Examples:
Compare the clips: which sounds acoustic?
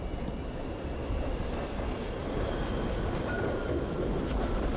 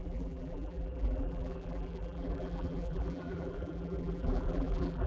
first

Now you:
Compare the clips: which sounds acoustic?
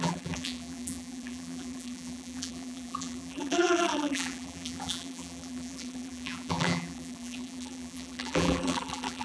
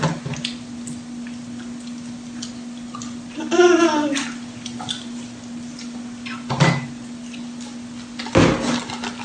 second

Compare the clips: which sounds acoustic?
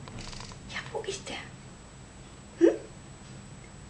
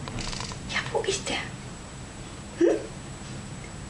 first